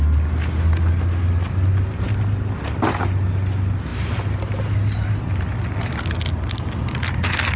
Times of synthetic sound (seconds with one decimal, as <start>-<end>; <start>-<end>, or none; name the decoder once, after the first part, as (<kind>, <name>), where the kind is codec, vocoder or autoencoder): none